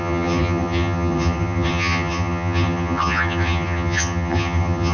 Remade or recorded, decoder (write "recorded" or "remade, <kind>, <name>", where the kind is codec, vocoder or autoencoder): remade, vocoder, HiFi-GAN